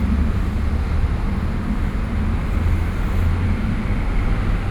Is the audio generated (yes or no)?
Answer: no